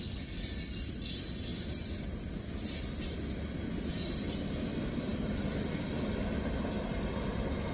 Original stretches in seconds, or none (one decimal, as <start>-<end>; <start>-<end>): 0.0-7.7